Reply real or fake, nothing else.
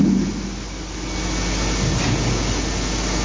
real